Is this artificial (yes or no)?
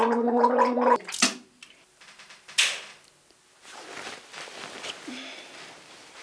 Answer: no